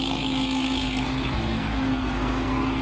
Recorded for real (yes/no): no